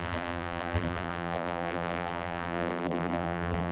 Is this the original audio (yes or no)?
no